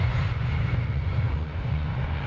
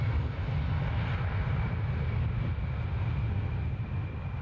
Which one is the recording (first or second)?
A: second